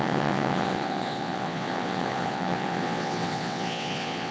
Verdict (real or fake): fake